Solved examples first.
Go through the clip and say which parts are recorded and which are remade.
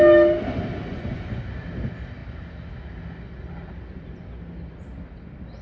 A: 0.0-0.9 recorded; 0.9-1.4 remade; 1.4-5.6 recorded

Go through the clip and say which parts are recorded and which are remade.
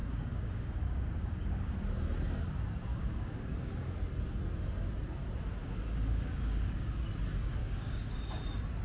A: 0.0-1.7 remade; 1.7-2.9 recorded; 2.9-3.7 remade; 3.7-5.6 recorded; 5.6-7.0 remade; 7.0-7.6 recorded; 7.6-8.4 remade; 8.4-8.8 recorded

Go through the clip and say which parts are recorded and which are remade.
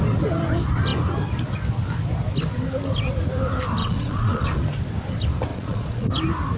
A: 0.0-3.8 recorded; 3.8-4.6 remade; 4.6-5.5 recorded; 5.5-6.1 remade; 6.1-6.6 recorded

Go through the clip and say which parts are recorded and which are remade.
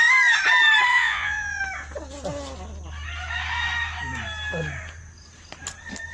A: 0.0-0.9 recorded; 0.9-1.6 remade; 1.6-6.1 recorded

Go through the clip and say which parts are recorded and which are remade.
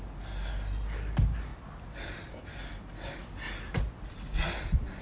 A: 0.0-5.0 recorded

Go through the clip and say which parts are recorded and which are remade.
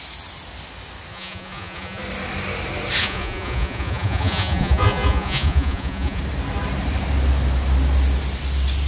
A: 0.0-1.1 recorded; 1.1-2.0 remade; 2.0-3.0 recorded; 3.0-6.2 remade; 6.2-8.9 recorded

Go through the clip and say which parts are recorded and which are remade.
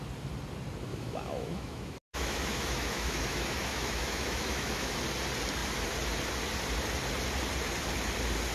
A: 0.0-0.9 recorded; 0.9-5.0 remade; 5.0-8.5 recorded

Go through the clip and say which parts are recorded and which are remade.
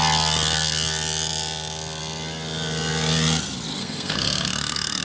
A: 0.0-3.8 recorded; 3.8-5.0 remade